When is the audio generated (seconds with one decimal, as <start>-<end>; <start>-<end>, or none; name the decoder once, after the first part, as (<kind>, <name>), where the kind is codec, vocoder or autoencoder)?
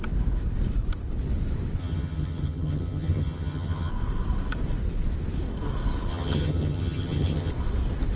1.8-3.9 (vocoder, HiFi-GAN); 6.1-7.5